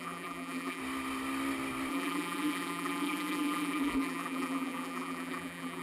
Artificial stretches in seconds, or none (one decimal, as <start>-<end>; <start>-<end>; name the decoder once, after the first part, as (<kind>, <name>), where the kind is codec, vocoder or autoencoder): 0.0-0.8 (vocoder, BigVGAN v2); 1.9-5.8